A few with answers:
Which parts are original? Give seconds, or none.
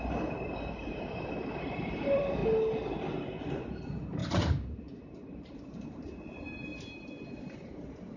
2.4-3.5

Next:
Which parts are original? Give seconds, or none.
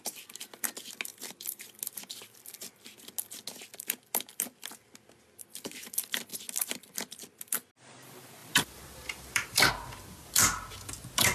0.0-1.1; 1.7-8.4; 9.7-11.3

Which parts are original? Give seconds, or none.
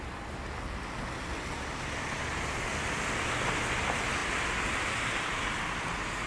0.0-6.3